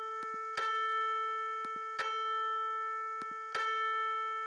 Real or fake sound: real